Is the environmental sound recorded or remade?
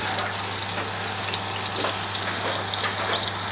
recorded